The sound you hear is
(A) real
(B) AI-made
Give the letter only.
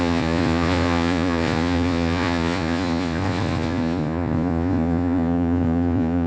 B